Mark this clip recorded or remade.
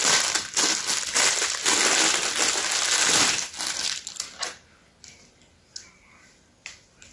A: recorded